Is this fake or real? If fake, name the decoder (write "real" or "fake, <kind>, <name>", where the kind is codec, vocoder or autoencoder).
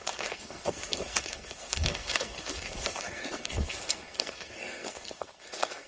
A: fake, codec, SNAC